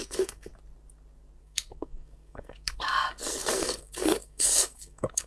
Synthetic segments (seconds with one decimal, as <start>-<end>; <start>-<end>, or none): 0.0-0.5; 1.4-5.3